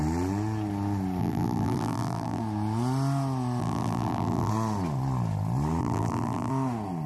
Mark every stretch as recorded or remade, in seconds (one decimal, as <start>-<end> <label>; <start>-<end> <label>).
0.0-1.2 recorded; 1.2-2.4 remade; 2.4-3.6 recorded; 3.6-4.5 remade; 4.5-5.8 recorded; 5.8-6.5 remade; 6.5-7.1 recorded